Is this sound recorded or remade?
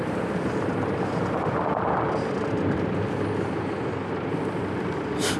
recorded